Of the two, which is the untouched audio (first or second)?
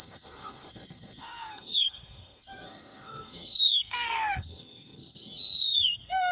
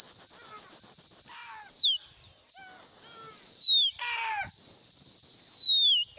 second